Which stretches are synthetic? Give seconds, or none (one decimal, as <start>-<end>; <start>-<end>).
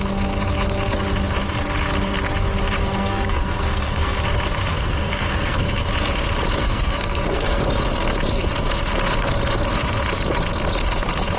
2.8-4.2; 4.7-5.9; 6.6-7.6